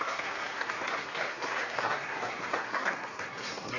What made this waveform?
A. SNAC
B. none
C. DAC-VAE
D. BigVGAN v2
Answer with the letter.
A